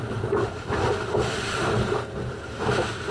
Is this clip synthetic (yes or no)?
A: no